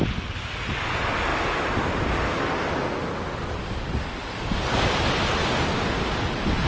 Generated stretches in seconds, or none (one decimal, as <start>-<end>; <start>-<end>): none

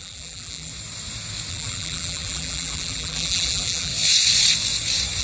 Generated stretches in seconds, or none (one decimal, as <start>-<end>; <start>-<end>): 0.0-0.7; 1.5-3.9

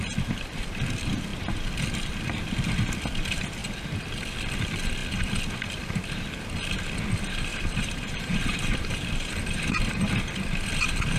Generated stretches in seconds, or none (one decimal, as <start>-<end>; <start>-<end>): 7.5-10.1

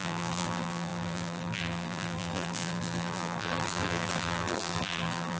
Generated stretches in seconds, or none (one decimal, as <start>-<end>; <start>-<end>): 0.0-5.4

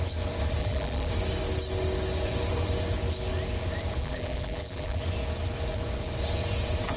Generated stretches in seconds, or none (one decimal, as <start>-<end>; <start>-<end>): 0.6-1.1; 4.0-5.0